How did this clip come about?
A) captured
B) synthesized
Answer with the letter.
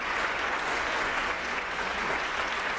B